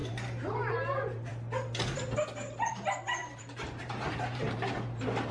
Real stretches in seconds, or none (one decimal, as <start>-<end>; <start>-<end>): 1.3-2.7